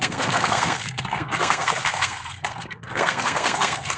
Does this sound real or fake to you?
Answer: fake